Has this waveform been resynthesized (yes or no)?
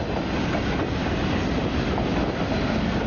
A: no